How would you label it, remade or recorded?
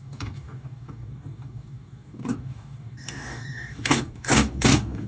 remade